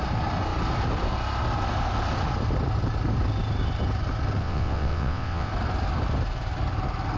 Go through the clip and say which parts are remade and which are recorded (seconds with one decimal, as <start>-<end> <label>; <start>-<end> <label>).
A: 0.0-4.4 recorded; 4.4-5.5 remade; 5.5-7.2 recorded